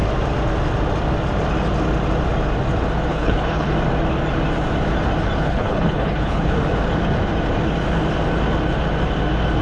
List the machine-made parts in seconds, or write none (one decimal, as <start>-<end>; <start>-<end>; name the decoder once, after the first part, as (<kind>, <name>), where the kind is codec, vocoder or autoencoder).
3.1-3.7 (codec, HILCodec); 5.4-6.5